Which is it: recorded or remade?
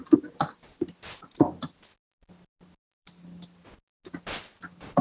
recorded